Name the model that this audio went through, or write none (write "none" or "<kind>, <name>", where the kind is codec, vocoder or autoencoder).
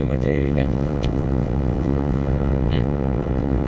vocoder, WaveNeXt